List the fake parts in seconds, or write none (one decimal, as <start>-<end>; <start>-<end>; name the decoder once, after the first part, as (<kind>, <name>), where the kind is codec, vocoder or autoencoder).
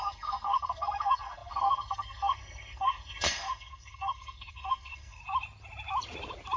0.0-5.2 (codec, SNAC)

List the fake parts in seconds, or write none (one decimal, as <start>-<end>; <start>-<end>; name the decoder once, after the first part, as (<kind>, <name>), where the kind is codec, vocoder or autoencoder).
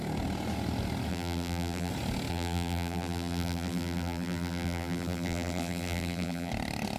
1.1-1.9 (vocoder, BigVGAN v2); 2.3-6.5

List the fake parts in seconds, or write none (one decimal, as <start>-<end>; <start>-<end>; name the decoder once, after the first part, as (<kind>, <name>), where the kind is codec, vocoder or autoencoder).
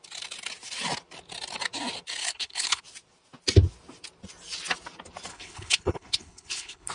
2.2-2.8 (codec, HILCodec); 5.3-6.9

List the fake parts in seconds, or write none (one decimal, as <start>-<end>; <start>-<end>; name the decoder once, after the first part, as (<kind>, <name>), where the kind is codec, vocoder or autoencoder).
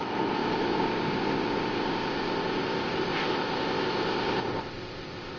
0.0-5.4 (codec, ZipCodec)